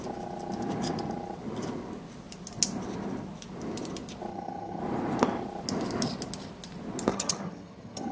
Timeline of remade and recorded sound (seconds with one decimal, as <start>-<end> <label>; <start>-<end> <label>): 0.0-4.3 recorded; 4.3-4.8 remade; 4.8-7.1 recorded; 7.1-8.1 remade